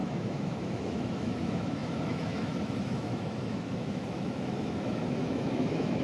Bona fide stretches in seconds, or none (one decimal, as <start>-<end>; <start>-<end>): none